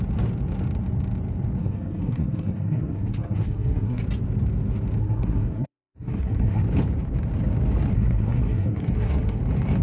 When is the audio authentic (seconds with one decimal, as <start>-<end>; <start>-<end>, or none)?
0.0-1.6; 4.0-5.0; 6.6-7.9; 9.4-9.8